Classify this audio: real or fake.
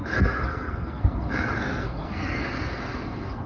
fake